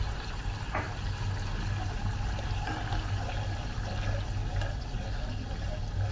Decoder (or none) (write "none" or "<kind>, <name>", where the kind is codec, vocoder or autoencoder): none